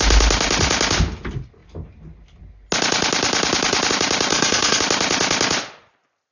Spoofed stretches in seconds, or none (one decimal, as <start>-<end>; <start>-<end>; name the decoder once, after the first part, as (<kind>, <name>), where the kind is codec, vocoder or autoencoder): 4.3-4.8 (codec, SNAC)